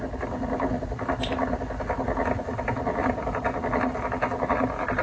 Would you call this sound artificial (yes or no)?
no